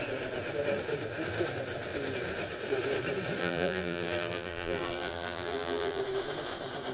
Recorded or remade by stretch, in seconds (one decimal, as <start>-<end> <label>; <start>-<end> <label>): 0.0-3.4 recorded; 3.4-6.0 remade; 6.0-6.9 recorded